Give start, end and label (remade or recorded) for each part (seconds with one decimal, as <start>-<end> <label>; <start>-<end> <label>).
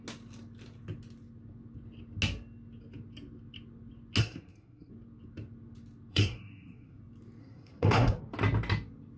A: 0.0-4.2 recorded; 4.2-4.9 remade; 4.9-6.1 recorded; 6.1-7.0 remade; 7.0-7.4 recorded; 7.4-8.2 remade; 8.2-9.2 recorded